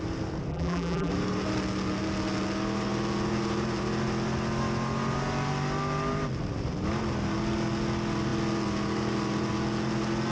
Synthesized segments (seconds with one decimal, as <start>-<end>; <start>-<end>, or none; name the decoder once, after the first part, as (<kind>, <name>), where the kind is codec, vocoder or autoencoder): 0.5-1.1 (vocoder, BigVGAN v2)

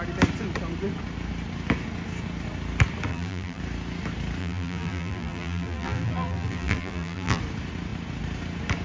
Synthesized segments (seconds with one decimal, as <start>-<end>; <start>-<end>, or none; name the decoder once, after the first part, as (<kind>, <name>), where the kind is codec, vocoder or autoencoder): 3.1-3.6 (vocoder, BigVGAN v2); 4.4-7.4